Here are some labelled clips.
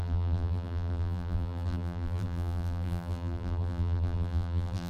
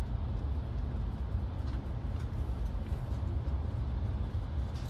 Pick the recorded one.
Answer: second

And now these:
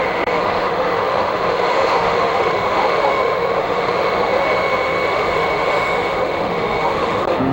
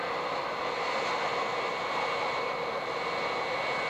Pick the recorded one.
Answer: second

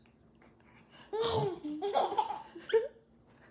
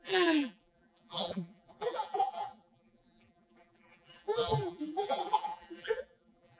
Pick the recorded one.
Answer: first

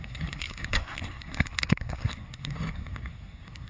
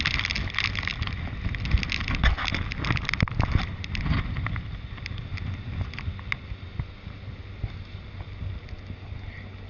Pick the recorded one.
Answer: second